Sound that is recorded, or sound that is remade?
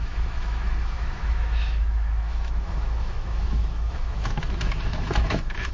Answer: remade